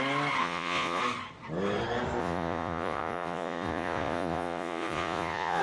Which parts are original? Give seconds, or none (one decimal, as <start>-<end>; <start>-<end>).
0.0-0.4; 1.0-2.2